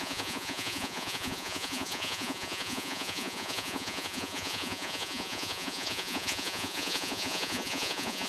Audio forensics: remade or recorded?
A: remade